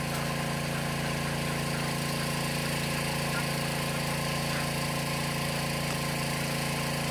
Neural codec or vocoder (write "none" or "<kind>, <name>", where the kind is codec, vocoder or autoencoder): none